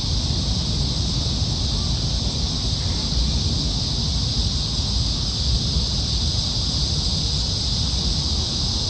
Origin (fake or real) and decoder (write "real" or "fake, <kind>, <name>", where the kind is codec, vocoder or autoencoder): real